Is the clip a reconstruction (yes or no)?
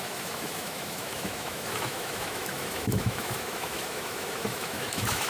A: yes